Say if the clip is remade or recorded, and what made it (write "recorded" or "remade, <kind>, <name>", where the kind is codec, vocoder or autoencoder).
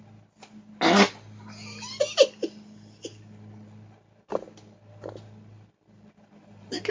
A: recorded